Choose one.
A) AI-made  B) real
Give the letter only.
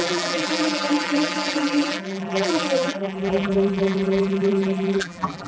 A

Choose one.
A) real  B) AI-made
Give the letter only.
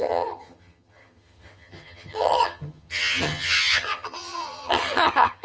B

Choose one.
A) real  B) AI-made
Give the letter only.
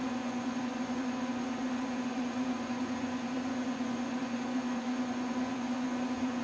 B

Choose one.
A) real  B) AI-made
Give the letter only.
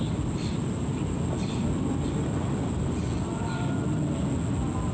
A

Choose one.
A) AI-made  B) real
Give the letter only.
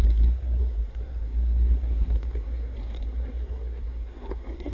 A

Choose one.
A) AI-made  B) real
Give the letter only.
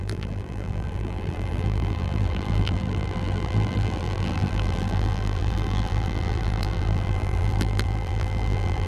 A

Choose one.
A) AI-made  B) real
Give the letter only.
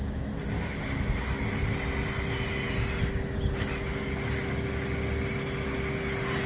B